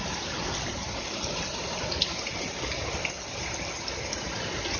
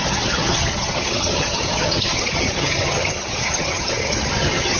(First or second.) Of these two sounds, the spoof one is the second